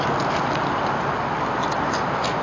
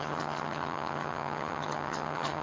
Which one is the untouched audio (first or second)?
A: first